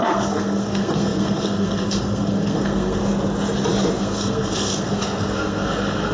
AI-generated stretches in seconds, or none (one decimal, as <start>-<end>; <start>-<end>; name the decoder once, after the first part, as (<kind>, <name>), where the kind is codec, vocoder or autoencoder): 0.0-3.0 (codec, SNAC); 4.0-6.1